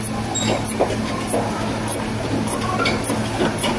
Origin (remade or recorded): recorded